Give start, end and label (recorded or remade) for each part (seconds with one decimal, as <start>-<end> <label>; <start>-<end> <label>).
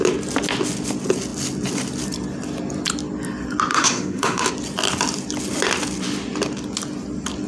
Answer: 0.0-3.7 recorded; 3.7-4.5 remade; 4.5-7.5 recorded